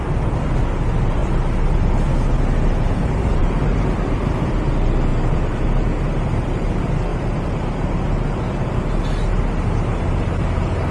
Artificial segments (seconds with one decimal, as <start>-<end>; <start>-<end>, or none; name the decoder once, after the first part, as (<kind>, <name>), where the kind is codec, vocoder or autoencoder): none